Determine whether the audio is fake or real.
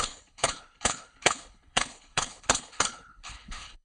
fake